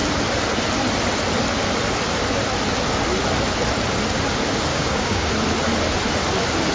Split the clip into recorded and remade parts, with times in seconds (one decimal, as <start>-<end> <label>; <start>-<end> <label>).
0.0-4.7 recorded; 4.7-5.3 remade; 5.3-6.7 recorded